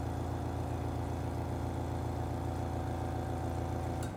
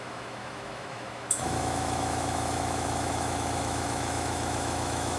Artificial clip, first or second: second